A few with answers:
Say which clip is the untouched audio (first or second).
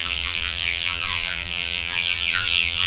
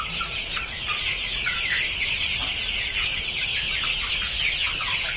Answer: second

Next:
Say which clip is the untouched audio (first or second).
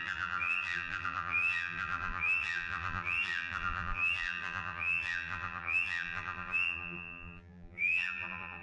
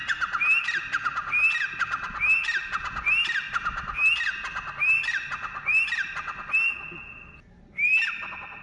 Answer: second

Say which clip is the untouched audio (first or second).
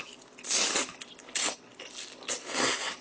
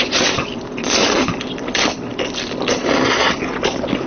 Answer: first